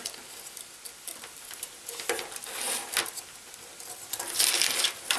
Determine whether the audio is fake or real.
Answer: real